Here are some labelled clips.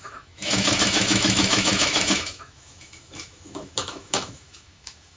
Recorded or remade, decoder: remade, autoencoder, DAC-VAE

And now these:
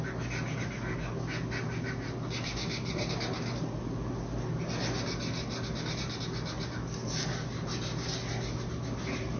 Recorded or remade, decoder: recorded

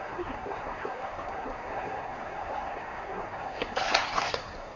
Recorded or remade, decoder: remade, codec, SNAC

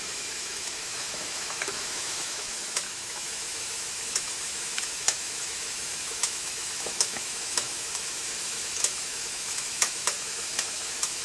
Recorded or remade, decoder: remade, autoencoder, DAC-VAE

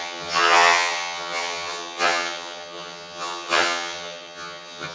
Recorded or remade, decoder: remade, vocoder, HiFi-GAN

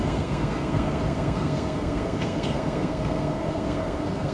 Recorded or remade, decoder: remade, codec, SNAC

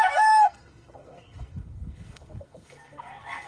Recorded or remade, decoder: remade, codec, SNAC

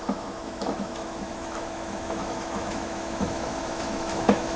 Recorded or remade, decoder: remade, autoencoder, DAC-VAE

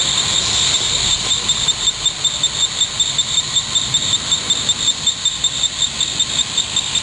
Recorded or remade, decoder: recorded